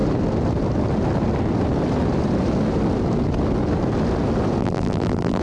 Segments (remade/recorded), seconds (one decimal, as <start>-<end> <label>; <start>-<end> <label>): 0.0-4.6 recorded; 4.6-5.4 remade